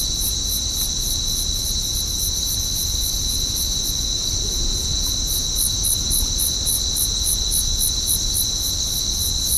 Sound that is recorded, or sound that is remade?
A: recorded